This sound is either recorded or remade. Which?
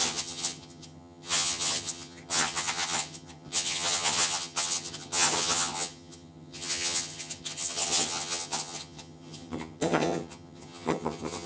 remade